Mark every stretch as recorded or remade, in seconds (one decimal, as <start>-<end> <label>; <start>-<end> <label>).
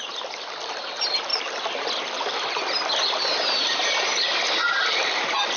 0.0-5.6 recorded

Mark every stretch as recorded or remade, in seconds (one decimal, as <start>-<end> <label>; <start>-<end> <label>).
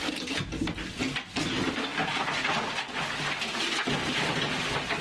0.0-5.0 recorded